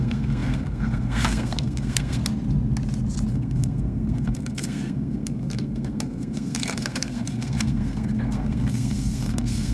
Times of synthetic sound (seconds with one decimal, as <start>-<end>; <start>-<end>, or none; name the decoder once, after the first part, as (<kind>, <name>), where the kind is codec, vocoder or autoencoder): 0.0-2.2 (codec, SNAC); 3.3-9.7

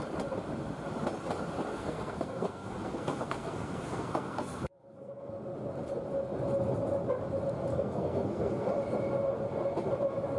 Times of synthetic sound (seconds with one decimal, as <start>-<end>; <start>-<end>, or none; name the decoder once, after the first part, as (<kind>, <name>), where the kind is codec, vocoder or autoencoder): 1.7-5.3 (codec, SNAC); 7.7-8.7